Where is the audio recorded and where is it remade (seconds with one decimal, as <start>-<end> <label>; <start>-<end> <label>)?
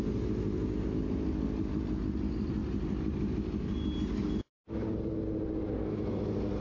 0.0-6.6 recorded